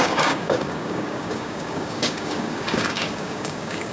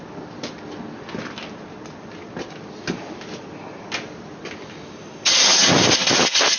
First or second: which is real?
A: second